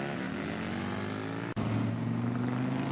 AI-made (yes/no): no